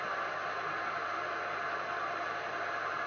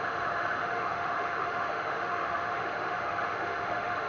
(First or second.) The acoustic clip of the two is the first